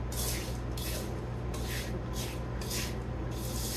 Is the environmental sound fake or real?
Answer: real